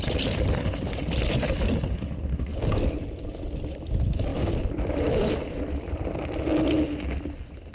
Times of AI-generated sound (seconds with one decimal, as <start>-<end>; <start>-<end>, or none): 4.3-6.0